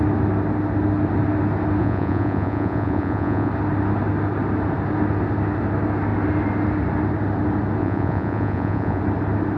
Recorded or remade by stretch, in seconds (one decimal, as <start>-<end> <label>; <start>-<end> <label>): 0.0-1.8 recorded; 1.8-3.5 remade; 3.5-7.8 recorded; 7.8-9.0 remade; 9.0-9.6 recorded